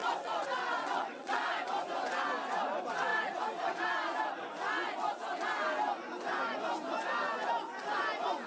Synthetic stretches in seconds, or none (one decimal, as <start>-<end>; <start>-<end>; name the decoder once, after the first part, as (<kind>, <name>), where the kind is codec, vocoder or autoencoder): 0.0-1.5 (vocoder, WaveNeXt)